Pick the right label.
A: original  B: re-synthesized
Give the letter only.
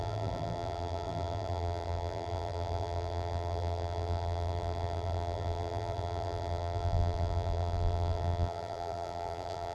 B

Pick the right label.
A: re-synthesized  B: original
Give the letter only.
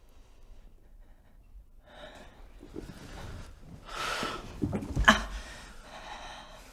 B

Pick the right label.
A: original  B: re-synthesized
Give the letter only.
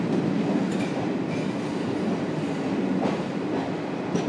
A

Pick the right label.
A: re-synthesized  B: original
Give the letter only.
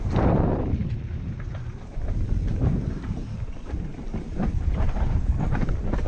A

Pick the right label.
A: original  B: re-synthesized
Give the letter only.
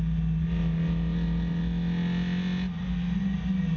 A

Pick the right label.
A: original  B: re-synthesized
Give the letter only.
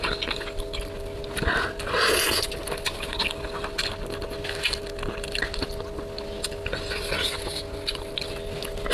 A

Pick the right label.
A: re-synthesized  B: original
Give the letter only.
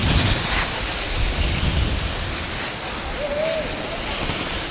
B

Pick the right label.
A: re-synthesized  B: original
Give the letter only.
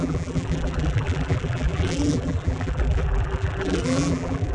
A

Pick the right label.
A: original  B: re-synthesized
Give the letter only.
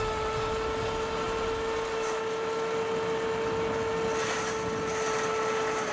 A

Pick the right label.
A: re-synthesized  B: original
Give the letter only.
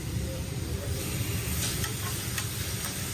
A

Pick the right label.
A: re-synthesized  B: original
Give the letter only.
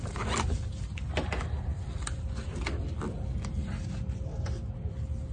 B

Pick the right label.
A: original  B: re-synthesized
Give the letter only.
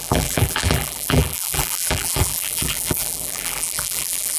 B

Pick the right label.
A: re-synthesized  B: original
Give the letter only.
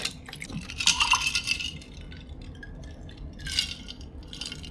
A